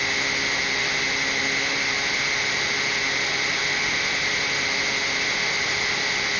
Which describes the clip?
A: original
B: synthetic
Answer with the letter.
A